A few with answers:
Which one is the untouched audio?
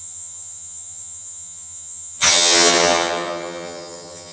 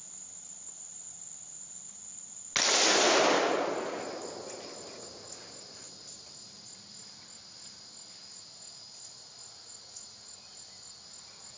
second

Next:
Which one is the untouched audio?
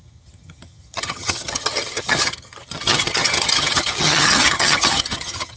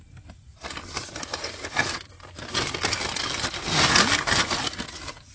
second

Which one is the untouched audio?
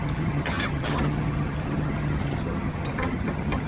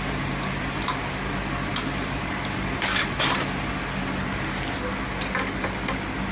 second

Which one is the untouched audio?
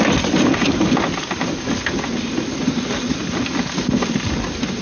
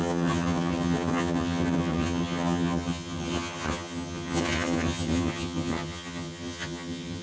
first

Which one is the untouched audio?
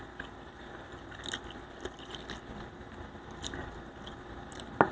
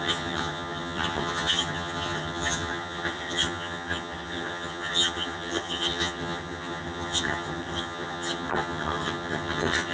first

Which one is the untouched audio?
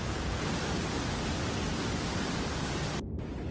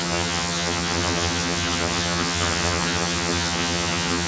first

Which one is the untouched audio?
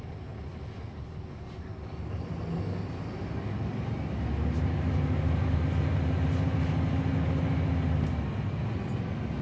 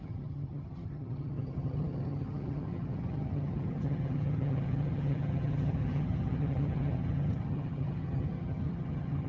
first